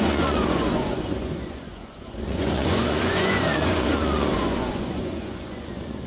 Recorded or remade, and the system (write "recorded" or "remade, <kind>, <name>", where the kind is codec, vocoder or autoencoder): remade, vocoder, Vocos